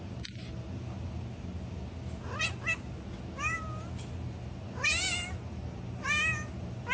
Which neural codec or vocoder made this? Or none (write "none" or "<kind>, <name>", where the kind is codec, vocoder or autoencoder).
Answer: none